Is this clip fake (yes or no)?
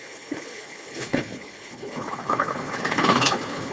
yes